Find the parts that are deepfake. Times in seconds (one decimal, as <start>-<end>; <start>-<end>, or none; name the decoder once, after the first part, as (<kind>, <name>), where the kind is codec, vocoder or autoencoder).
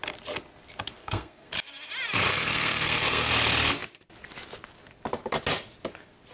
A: 1.0-1.5 (codec, SNAC); 2.3-3.3